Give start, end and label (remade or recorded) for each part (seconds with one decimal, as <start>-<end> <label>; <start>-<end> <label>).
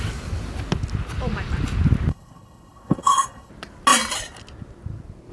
0.0-2.1 recorded; 2.1-3.5 remade; 3.5-5.3 recorded